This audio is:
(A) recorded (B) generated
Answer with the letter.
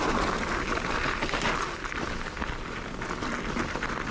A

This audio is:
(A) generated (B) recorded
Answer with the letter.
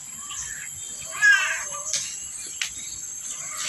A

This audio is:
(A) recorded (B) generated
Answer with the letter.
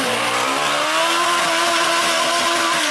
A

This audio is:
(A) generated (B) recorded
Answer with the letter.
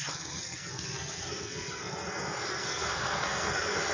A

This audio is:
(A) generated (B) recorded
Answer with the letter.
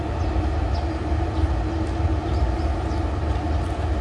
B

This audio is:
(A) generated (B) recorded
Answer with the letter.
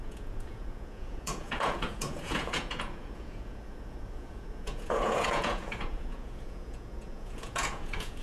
A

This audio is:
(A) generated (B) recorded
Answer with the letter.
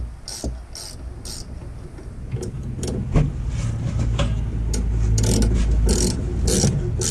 B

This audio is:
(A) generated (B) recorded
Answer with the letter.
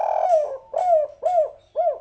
B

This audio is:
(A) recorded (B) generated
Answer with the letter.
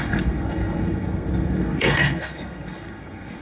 B